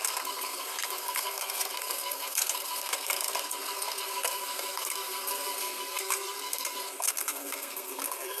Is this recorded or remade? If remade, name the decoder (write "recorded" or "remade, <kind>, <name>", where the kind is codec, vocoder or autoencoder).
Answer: remade, codec, SNAC